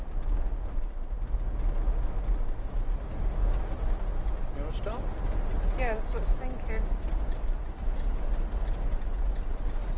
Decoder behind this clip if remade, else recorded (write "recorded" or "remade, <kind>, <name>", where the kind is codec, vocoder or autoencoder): recorded